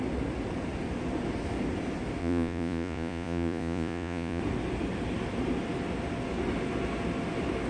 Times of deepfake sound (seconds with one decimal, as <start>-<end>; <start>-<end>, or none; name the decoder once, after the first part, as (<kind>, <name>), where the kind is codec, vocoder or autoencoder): 2.2-4.4 (vocoder, Vocos)